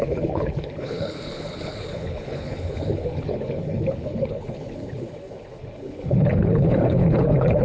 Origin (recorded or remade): remade